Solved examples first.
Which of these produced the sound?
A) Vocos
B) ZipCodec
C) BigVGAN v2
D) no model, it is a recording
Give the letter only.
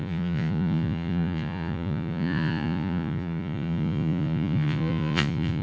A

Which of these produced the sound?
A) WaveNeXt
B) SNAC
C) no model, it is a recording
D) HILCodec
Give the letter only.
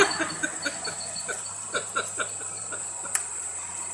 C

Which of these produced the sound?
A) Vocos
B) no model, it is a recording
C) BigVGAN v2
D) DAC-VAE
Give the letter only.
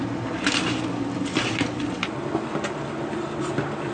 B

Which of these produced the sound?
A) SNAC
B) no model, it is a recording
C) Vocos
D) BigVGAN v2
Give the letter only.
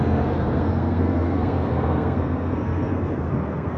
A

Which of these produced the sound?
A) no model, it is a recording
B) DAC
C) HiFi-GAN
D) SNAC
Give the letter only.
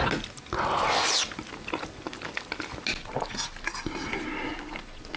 A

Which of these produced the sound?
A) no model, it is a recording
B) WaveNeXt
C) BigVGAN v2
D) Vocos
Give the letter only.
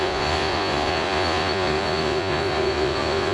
D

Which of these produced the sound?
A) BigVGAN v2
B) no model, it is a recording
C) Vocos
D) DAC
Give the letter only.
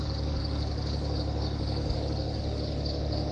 D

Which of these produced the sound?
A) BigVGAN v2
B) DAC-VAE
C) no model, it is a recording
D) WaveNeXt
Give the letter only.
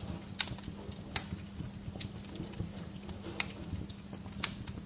C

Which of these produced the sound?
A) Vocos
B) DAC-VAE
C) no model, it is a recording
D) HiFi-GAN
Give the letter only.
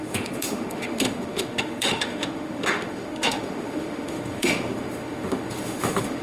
B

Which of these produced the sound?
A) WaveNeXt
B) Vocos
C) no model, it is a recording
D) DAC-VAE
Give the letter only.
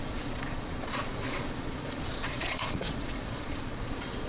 B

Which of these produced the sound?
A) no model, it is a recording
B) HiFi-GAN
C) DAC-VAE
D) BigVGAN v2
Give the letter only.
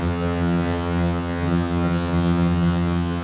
B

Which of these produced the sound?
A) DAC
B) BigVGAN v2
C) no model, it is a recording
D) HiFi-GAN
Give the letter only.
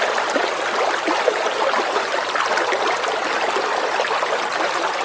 C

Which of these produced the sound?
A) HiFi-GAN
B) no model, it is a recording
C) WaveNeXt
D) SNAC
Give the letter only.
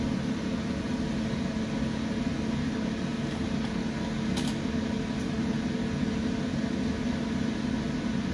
B